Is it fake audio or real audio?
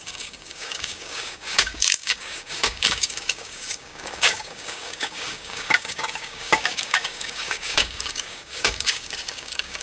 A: fake